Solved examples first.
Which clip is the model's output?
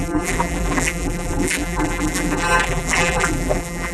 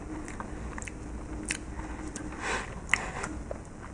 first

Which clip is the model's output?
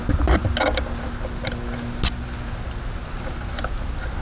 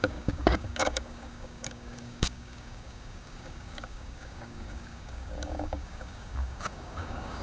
second